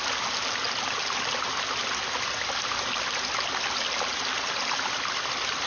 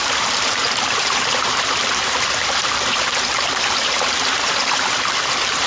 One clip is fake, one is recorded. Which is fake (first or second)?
second